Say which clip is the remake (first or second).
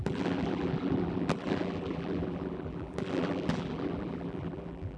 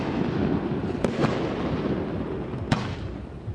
first